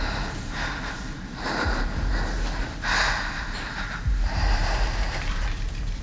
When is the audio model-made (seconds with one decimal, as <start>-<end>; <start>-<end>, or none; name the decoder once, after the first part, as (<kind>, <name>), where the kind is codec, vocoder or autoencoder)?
0.0-2.1 (vocoder, BigVGAN v2); 2.6-6.0